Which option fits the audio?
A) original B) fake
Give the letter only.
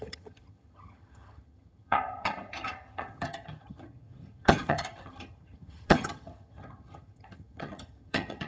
B